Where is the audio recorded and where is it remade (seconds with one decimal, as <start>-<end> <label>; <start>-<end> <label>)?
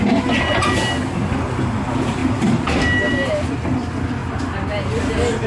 0.0-5.5 recorded